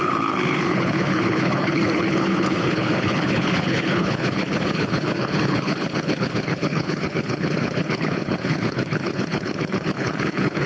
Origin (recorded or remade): remade